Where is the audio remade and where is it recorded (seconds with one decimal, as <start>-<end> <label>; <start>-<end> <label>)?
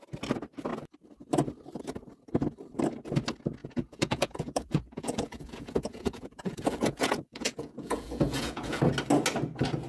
0.0-3.6 recorded; 3.6-8.8 remade; 8.8-9.9 recorded